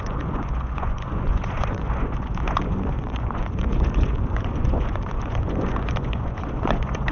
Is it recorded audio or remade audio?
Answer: remade